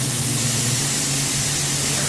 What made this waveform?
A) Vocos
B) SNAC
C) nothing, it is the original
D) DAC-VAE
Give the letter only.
C